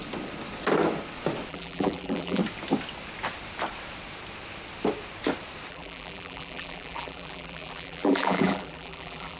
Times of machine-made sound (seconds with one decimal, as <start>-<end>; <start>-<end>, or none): 1.5-2.4; 5.7-9.4